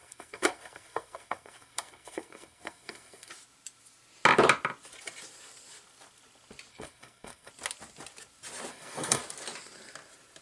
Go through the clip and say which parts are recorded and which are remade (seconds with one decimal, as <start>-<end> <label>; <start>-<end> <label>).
0.0-3.3 remade; 3.3-6.7 recorded; 6.7-7.5 remade; 7.5-8.7 recorded; 8.7-9.2 remade; 9.2-10.4 recorded